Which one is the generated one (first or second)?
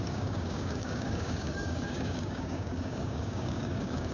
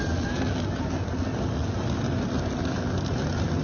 first